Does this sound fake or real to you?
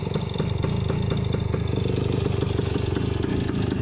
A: real